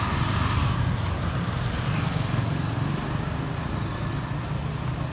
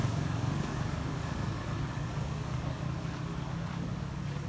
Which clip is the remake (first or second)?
second